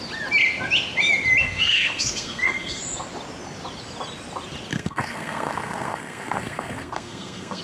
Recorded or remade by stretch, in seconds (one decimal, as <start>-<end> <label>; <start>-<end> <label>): 0.0-1.4 recorded; 1.4-2.8 remade; 2.8-4.7 recorded; 4.7-7.6 remade